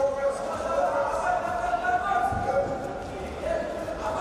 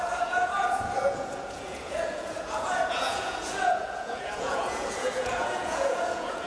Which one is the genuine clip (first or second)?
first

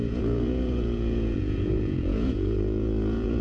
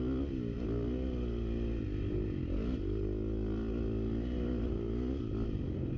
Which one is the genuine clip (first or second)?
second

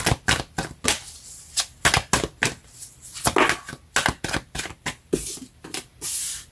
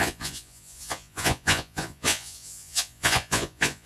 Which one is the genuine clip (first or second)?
first